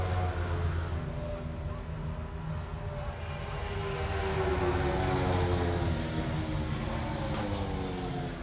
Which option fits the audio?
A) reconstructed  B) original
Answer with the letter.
B